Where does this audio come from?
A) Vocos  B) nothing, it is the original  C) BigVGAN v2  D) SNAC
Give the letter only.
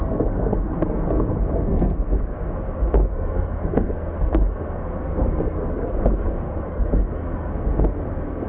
D